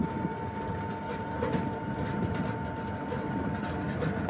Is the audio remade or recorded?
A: recorded